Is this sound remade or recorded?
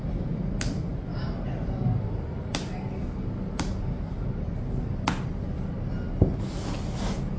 recorded